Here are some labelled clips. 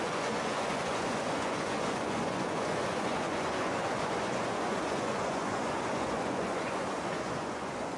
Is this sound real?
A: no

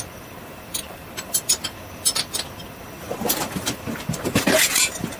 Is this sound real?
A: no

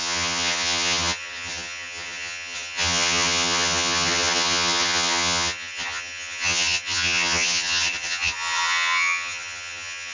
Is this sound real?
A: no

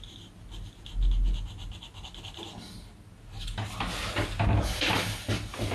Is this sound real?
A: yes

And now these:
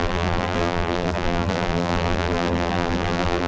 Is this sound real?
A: no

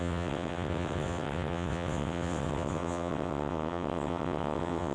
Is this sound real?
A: no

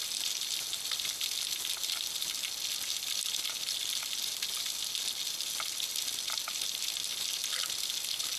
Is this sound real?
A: yes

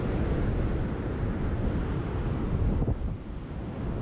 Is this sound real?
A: yes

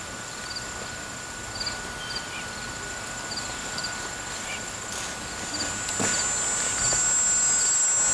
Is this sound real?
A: yes